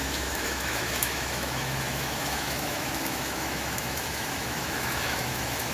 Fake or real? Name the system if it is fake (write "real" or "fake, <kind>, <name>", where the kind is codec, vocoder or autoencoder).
fake, autoencoder, DAC-VAE